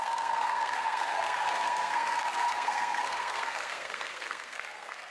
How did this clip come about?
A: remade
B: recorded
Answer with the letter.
A